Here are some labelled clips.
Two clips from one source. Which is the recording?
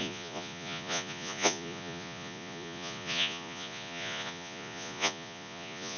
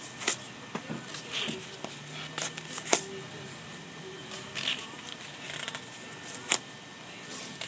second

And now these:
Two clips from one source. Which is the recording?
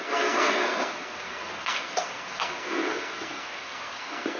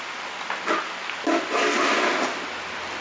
second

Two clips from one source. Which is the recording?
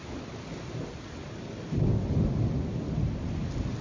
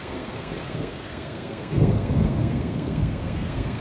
first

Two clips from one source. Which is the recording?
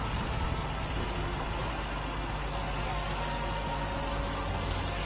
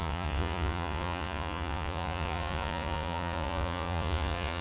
first